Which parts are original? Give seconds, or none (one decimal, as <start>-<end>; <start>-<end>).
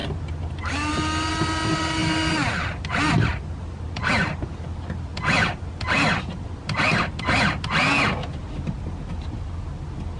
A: 0.0-10.2